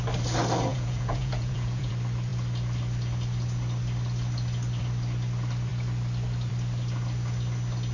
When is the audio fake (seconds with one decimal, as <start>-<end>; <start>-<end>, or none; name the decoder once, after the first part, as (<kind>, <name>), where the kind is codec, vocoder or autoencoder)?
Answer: 0.7-1.9 (vocoder, Vocos)